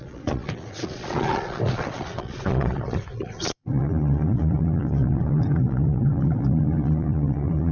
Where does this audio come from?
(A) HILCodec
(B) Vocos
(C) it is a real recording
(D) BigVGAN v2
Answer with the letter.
B